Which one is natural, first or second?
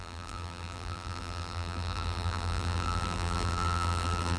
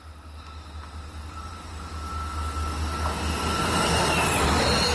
second